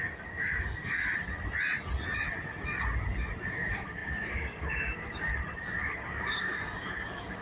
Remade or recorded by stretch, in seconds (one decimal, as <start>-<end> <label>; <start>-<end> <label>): 0.0-1.0 remade; 1.0-3.5 recorded; 3.5-5.3 remade; 5.3-5.9 recorded; 5.9-7.4 remade